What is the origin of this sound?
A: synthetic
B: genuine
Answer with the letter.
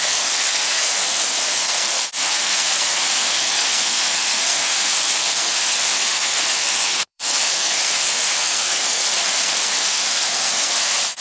A